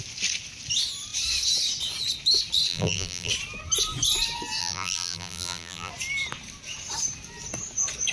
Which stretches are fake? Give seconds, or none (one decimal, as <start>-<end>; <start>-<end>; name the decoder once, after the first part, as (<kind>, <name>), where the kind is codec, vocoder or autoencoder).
2.7-3.3 (vocoder, BigVGAN v2); 4.6-5.9